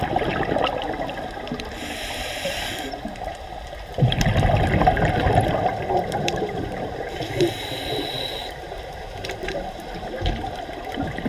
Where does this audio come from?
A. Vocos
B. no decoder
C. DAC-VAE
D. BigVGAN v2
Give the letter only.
D